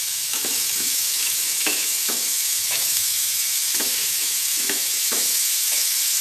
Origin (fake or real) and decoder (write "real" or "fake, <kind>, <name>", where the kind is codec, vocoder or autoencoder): fake, autoencoder, DAC-VAE